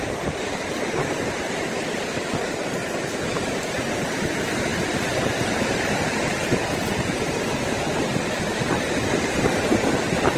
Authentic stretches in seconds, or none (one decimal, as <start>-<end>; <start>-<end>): 2.8-4.2